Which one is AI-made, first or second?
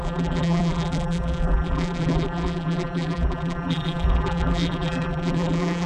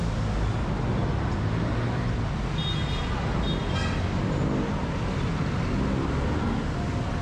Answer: first